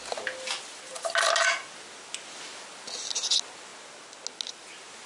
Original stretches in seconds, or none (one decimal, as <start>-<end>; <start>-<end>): 0.0-5.1